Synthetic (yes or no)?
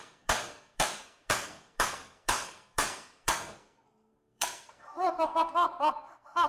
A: yes